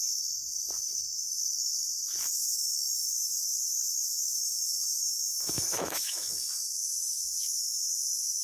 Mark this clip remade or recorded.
remade